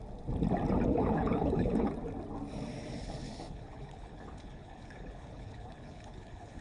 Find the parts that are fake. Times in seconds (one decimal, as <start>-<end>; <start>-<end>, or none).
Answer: 0.9-1.9; 3.0-6.6